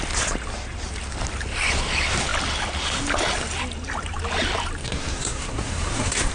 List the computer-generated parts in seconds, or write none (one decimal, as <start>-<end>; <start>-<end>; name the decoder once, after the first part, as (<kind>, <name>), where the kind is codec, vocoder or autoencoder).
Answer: 4.8-6.3 (codec, SNAC)